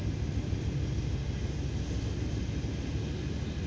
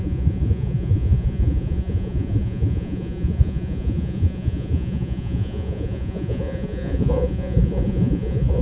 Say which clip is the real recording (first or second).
first